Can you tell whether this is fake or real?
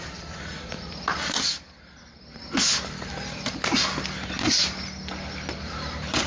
real